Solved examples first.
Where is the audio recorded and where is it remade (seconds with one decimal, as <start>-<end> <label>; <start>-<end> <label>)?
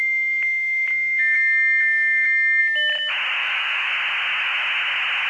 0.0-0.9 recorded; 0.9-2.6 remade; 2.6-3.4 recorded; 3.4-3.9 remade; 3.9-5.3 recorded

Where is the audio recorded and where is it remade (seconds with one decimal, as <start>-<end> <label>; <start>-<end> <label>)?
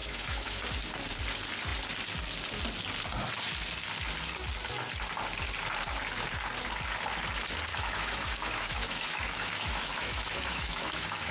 0.0-0.6 remade; 0.6-7.7 recorded; 7.7-11.3 remade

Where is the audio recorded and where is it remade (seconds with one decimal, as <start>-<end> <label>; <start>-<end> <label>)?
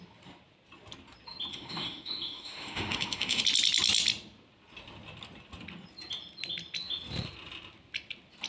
0.0-1.5 recorded; 1.5-3.4 remade; 3.4-8.5 recorded